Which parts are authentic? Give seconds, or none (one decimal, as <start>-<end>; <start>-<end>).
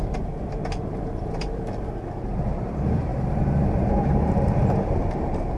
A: none